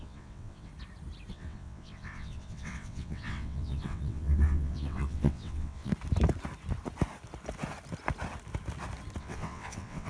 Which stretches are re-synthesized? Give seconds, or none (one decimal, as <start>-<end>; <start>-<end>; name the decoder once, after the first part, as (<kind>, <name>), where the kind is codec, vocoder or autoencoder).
0.0-0.7 (vocoder, WaveNeXt); 1.3-5.9; 9.2-10.1